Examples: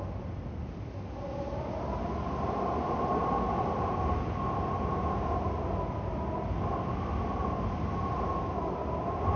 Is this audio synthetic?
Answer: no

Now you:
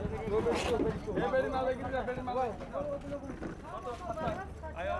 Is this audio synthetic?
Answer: no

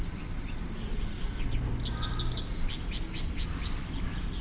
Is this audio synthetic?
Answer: no